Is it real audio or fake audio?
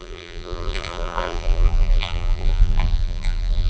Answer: fake